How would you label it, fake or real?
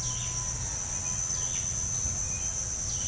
real